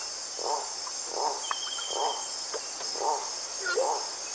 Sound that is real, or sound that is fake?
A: real